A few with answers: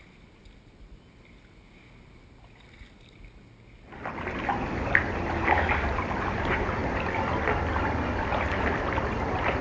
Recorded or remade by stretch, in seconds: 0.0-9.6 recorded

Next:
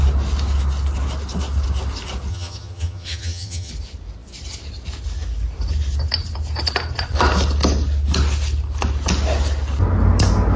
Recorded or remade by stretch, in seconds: 0.0-2.3 recorded; 2.3-3.7 remade; 3.7-10.6 recorded

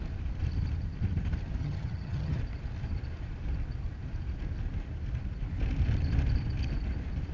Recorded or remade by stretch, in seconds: 0.0-1.6 recorded; 1.6-2.4 remade; 2.4-7.3 recorded

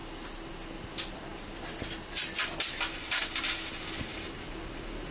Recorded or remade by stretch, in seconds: 0.0-5.1 recorded

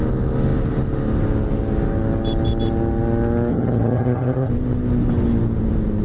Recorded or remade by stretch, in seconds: 0.0-3.5 recorded; 3.5-4.5 remade; 4.5-6.0 recorded

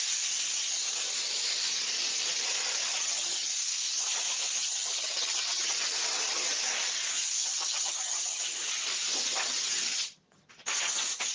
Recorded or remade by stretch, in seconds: 0.0-2.9 recorded; 2.9-3.5 remade; 3.5-4.6 recorded; 4.6-5.7 remade; 5.7-7.4 recorded; 7.4-8.6 remade; 8.6-9.9 recorded; 9.9-10.5 remade; 10.5-11.3 recorded